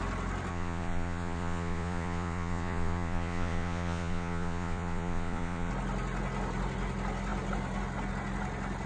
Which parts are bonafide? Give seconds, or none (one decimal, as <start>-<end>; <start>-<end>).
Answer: 0.0-0.5; 5.7-8.9